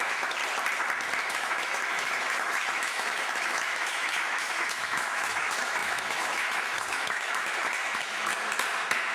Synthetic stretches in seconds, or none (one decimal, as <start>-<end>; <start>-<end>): 0.0-0.4; 1.3-8.3